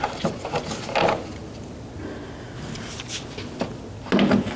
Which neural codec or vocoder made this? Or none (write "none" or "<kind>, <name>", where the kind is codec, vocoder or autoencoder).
none